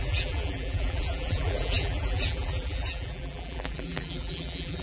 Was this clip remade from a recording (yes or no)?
yes